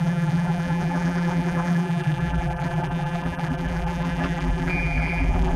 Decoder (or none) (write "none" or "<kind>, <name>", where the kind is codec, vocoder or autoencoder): vocoder, BigVGAN v2